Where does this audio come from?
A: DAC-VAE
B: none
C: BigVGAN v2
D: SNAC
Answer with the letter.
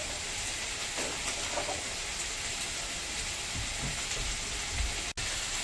B